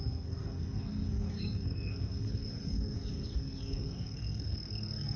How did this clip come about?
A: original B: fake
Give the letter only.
B